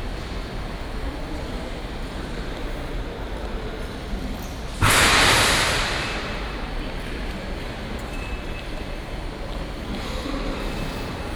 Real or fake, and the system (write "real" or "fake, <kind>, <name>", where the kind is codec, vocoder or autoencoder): real